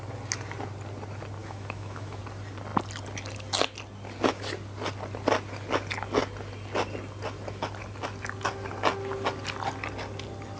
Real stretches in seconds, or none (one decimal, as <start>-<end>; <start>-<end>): 0.0-1.4; 2.2-10.6